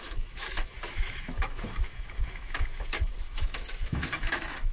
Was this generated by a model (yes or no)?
yes